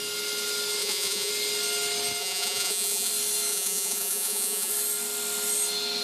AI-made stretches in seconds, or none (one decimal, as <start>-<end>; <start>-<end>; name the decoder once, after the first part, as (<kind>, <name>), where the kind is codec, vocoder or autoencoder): 0.8-1.3 (vocoder, Vocos); 2.2-3.1; 3.5-4.7